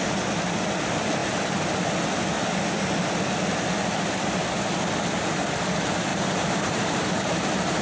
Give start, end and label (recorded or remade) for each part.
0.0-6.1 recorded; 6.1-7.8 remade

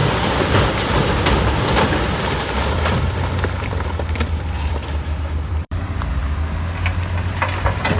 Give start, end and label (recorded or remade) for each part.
0.0-6.2 remade; 6.2-7.2 recorded; 7.2-8.0 remade